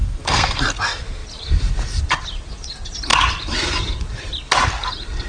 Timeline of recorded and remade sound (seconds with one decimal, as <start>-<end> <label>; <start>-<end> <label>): 0.0-0.6 remade; 0.6-5.3 recorded